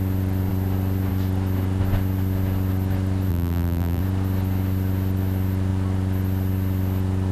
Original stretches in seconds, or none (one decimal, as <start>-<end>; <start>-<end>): 0.0-3.3; 4.0-7.3